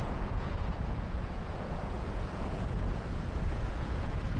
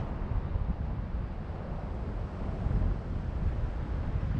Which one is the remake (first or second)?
first